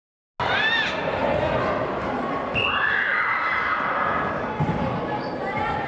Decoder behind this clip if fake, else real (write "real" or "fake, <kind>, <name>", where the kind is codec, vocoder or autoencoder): real